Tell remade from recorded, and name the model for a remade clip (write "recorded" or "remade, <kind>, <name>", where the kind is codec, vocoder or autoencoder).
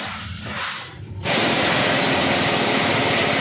recorded